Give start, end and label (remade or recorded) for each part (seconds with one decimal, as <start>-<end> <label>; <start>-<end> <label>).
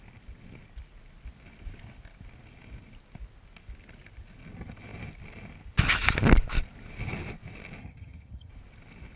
0.0-7.8 recorded; 7.8-8.5 remade; 8.5-9.2 recorded